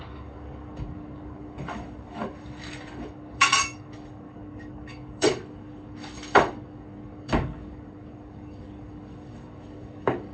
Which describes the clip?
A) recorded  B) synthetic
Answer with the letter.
B